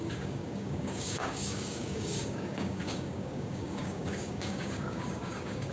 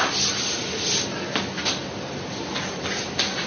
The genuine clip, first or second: second